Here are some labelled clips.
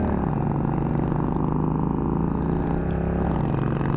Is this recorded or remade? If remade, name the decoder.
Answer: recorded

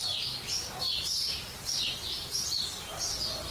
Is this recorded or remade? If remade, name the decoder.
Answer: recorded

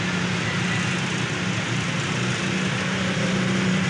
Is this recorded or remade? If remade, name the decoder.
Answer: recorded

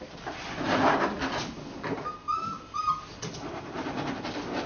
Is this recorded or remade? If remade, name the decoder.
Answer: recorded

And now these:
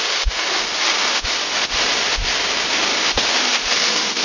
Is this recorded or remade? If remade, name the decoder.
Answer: recorded